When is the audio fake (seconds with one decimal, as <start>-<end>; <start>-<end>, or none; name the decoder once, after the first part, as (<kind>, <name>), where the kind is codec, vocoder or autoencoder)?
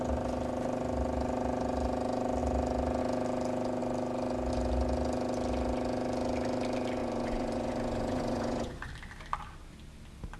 7.0-8.9 (vocoder, Vocos)